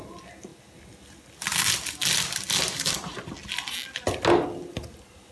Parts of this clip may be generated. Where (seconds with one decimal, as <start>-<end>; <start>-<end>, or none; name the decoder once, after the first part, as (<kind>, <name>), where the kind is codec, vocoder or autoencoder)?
none